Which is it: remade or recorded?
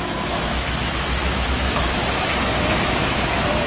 remade